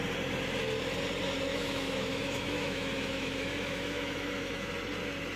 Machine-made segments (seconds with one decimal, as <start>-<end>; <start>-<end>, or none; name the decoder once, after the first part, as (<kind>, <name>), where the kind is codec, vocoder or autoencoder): 1.5-4.7 (autoencoder, DAC-VAE)